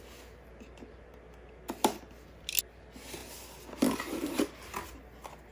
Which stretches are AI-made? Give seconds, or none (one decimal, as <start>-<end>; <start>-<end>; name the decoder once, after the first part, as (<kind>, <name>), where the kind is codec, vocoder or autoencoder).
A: none